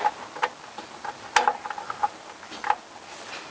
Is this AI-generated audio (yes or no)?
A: no